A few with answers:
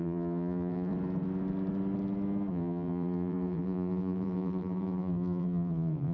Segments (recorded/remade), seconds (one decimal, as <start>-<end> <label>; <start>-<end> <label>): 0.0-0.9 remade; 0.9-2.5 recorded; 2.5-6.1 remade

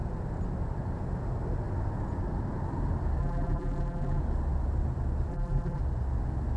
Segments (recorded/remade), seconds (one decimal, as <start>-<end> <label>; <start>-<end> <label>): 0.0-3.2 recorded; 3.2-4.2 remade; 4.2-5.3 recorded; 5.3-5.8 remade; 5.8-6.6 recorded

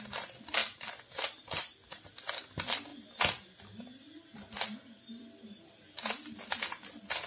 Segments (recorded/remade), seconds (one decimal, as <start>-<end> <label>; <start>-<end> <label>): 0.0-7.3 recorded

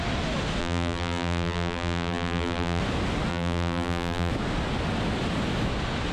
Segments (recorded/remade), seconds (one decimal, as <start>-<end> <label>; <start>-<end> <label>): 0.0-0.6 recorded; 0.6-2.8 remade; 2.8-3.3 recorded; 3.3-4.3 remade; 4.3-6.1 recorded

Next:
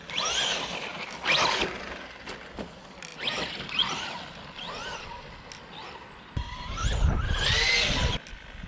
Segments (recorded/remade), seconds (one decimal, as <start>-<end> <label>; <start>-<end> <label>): 0.0-8.7 recorded